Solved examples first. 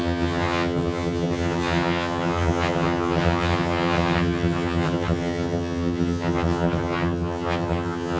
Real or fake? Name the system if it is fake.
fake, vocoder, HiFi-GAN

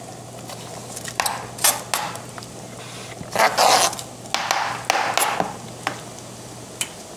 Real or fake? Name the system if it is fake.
real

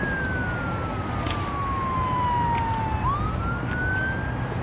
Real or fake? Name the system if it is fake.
real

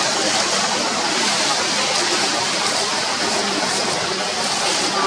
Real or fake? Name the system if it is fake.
real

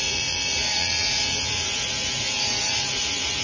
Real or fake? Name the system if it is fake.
fake, vocoder, Vocos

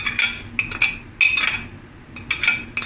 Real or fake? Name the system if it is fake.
real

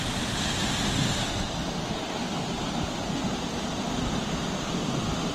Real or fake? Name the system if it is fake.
real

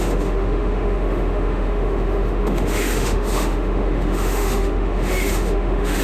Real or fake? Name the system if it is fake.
fake, autoencoder, DAC-VAE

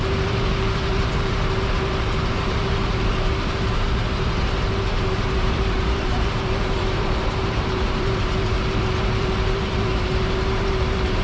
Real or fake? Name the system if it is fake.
fake, vocoder, BigVGAN v2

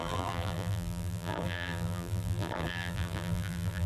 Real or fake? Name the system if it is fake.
fake, vocoder, BigVGAN v2